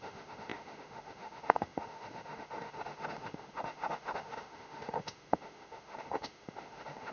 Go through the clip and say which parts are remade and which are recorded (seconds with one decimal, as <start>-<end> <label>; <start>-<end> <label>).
0.0-7.1 remade